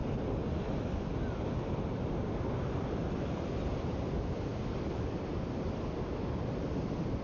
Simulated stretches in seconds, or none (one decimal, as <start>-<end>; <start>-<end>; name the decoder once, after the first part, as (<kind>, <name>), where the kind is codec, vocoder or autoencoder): none